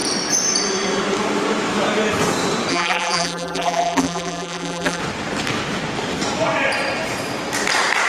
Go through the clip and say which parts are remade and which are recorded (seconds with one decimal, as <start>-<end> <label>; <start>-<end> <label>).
0.0-2.7 recorded; 2.7-5.0 remade; 5.0-8.1 recorded